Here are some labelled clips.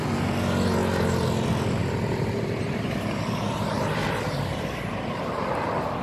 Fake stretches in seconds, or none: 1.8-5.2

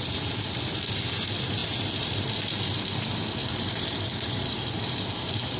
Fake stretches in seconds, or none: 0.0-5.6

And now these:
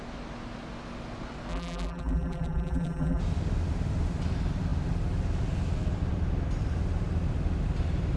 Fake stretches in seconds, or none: 1.5-3.2